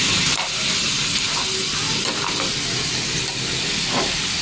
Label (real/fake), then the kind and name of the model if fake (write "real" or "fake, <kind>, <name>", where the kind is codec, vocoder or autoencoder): real